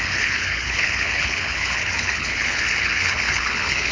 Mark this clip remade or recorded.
remade